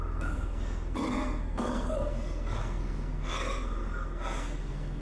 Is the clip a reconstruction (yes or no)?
yes